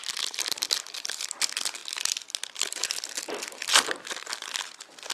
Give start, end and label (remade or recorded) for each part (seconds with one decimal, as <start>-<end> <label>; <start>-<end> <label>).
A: 0.0-5.1 recorded